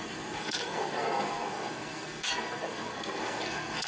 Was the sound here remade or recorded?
remade